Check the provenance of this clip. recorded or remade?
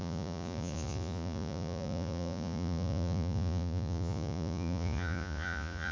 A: remade